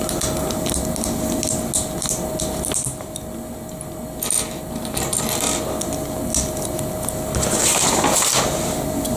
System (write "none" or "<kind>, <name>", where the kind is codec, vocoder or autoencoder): none